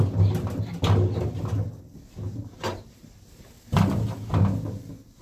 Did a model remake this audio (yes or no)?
no